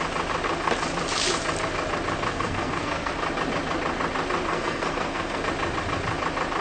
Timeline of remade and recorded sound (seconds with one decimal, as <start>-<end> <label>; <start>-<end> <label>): 0.0-2.3 recorded; 2.3-3.1 remade; 3.1-4.5 recorded; 4.5-5.4 remade; 5.4-6.6 recorded